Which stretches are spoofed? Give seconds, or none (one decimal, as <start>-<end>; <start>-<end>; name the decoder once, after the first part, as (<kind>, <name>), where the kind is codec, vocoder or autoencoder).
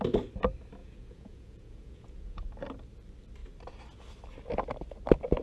0.8-2.5 (vocoder, Vocos)